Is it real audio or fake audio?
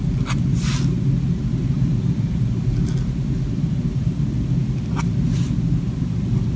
real